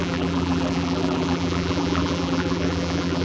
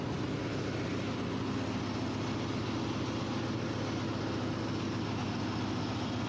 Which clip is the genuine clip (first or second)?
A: second